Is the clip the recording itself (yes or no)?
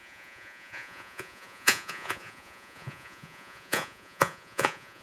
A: no